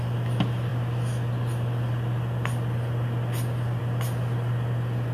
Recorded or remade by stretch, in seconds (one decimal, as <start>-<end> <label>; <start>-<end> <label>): 0.0-5.1 recorded